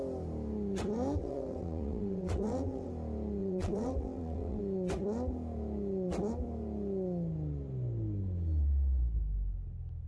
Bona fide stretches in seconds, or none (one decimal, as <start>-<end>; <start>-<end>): 0.0-1.2; 2.9-3.4; 4.6-10.1